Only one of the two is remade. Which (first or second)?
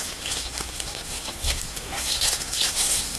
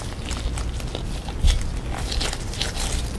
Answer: first